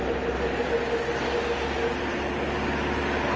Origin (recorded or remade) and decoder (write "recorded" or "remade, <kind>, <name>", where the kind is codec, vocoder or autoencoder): recorded